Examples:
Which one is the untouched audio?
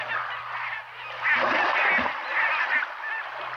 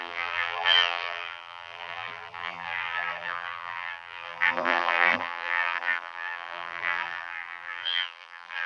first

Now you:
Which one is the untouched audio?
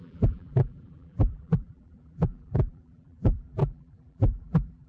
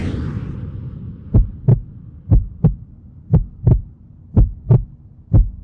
second